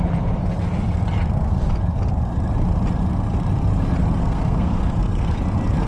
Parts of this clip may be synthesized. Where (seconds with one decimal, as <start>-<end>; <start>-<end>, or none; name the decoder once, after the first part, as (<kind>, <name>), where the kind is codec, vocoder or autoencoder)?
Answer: 4.2-5.4 (codec, SNAC)